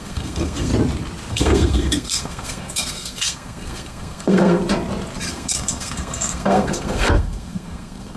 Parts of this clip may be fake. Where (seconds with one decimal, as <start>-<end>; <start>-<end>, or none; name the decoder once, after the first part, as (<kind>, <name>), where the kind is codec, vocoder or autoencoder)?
0.0-0.7 (codec, SNAC); 1.3-4.6; 5.3-8.2